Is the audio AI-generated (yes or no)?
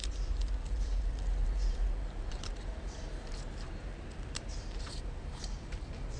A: yes